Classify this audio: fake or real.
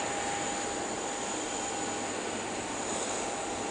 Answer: real